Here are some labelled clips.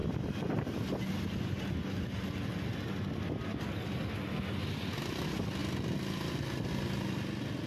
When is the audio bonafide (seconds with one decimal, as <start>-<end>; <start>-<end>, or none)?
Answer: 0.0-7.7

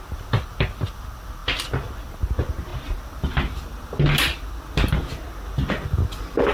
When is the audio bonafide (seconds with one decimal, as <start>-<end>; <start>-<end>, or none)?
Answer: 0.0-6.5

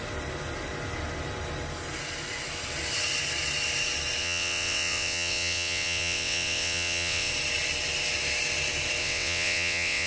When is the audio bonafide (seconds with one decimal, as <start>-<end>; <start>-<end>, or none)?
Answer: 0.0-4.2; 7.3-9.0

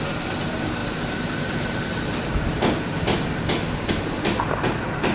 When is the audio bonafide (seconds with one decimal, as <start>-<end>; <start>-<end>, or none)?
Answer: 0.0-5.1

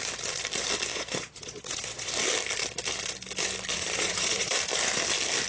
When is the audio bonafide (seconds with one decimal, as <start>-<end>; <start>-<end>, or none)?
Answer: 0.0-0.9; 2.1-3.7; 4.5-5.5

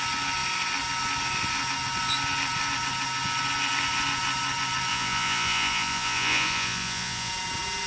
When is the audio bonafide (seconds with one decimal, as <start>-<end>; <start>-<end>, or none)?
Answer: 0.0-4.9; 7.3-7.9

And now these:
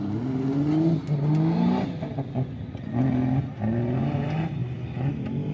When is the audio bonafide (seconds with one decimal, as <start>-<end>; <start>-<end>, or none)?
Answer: 0.0-5.5